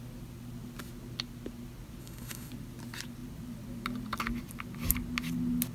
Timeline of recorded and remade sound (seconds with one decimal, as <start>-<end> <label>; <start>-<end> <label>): 0.0-2.0 recorded; 2.0-2.5 remade; 2.5-5.7 recorded